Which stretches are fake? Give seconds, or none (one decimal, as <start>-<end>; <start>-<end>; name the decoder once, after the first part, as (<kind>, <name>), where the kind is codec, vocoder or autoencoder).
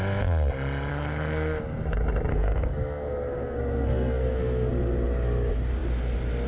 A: 0.9-1.6 (codec, SNAC); 2.3-4.7